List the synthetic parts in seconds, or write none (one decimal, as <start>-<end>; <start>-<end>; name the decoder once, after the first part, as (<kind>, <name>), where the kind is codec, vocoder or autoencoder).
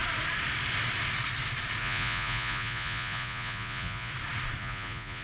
1.8-4.1 (vocoder, Vocos); 4.6-5.2